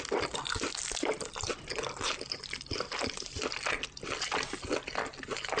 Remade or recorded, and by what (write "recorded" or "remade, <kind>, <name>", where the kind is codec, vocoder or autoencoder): recorded